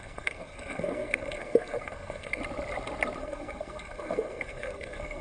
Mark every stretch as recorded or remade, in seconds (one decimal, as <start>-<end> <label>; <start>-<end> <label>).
0.0-2.4 remade; 2.4-3.2 recorded; 3.2-5.2 remade